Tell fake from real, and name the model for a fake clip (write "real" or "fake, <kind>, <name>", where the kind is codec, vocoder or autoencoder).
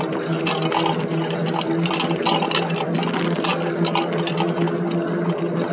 real